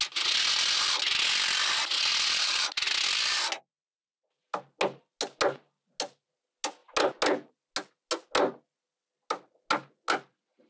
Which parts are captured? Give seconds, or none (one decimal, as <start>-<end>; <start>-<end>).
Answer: 0.0-10.7

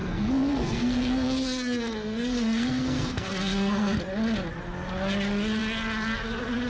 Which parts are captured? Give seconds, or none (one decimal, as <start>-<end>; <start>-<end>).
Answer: 4.0-6.7

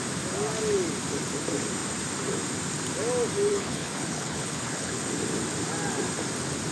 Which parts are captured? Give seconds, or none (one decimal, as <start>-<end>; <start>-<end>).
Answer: 0.0-3.5; 5.0-6.7

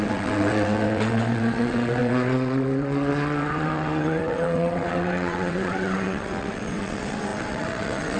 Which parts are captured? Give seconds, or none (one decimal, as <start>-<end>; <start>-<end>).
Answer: none

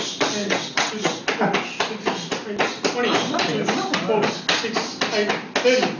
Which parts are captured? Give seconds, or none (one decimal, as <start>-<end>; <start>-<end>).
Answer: 0.0-0.4; 1.2-6.0

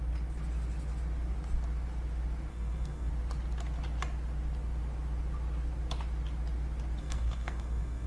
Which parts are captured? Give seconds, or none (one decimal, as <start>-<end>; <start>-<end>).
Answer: 0.0-2.5; 3.1-7.0